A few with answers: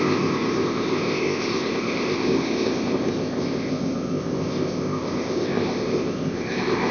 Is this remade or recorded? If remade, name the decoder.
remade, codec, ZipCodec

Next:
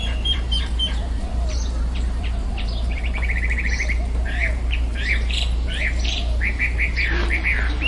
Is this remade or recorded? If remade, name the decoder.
remade, vocoder, BigVGAN v2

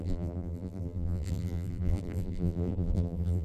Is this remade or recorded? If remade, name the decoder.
remade, vocoder, BigVGAN v2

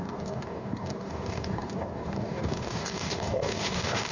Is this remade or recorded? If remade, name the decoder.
remade, codec, DAC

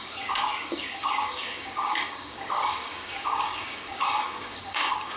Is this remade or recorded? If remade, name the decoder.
remade, codec, DAC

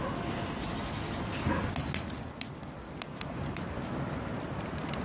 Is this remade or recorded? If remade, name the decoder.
recorded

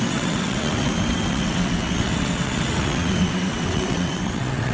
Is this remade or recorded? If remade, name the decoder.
remade, vocoder, WaveNeXt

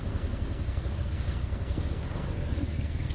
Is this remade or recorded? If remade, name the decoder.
remade, codec, SNAC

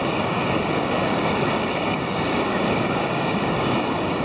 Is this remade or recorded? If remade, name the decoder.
remade, codec, DAC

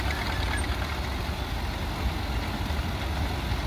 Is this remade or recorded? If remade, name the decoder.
recorded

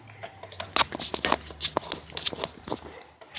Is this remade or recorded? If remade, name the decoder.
recorded